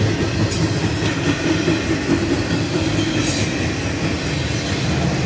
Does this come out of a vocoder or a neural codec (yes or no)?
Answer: no